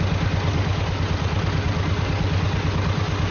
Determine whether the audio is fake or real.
real